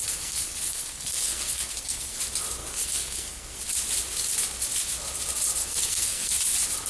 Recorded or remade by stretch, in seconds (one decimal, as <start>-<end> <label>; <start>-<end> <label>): 0.0-2.2 remade; 2.2-2.6 recorded; 2.6-3.6 remade; 3.6-5.6 recorded; 5.6-6.4 remade; 6.4-6.9 recorded